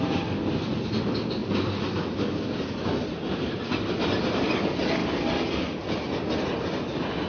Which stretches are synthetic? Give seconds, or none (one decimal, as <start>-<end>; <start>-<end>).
1.4-3.6